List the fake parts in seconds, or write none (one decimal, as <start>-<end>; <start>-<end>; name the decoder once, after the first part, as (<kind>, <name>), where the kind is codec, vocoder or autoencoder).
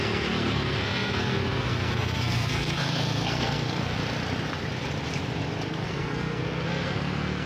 0.0-4.0 (codec, SNAC); 5.7-7.5